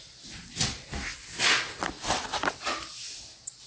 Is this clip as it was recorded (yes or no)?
yes